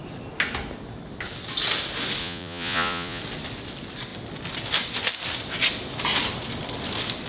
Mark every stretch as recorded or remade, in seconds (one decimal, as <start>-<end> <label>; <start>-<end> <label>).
0.0-2.2 recorded; 2.2-3.2 remade; 3.2-7.3 recorded